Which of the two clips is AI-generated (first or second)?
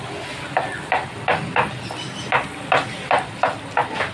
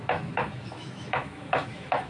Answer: second